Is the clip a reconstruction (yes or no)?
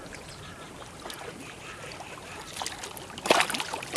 no